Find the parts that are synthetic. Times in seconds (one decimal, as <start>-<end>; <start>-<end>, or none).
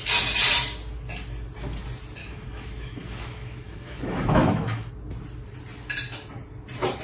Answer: 2.2-4.9